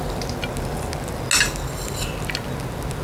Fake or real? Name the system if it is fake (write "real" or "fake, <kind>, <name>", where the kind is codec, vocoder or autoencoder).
real